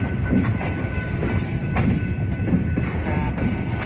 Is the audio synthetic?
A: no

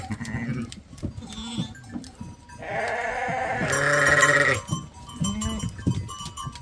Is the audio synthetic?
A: no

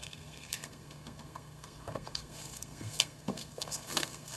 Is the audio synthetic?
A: yes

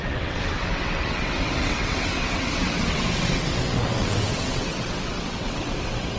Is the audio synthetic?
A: yes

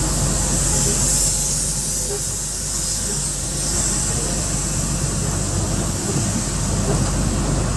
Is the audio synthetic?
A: no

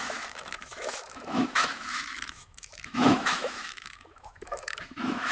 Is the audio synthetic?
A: yes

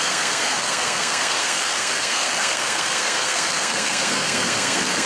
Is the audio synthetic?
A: yes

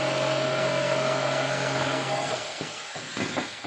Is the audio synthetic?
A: yes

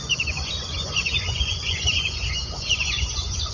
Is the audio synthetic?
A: yes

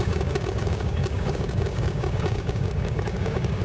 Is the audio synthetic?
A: yes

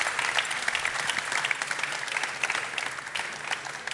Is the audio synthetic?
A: no